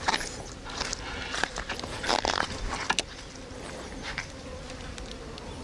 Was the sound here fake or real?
real